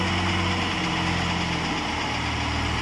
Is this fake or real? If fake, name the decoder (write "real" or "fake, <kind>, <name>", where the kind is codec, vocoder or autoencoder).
real